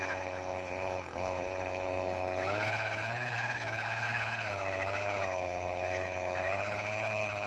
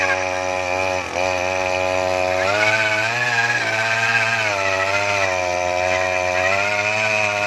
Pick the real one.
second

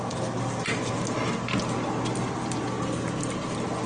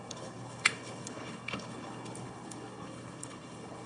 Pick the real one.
first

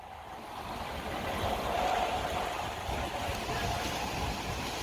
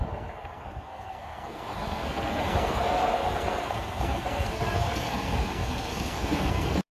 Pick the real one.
first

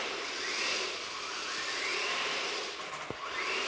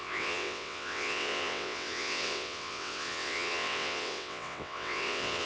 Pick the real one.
first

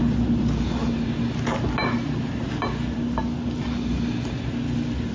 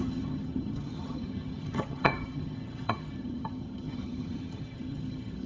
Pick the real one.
first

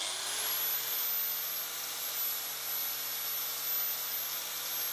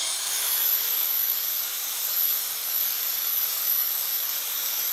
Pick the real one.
first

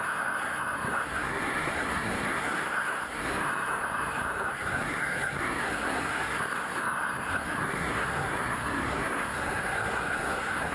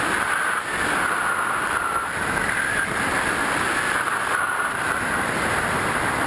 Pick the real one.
second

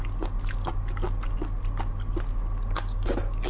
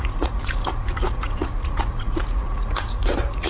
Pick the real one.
first